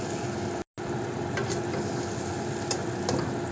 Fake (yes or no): no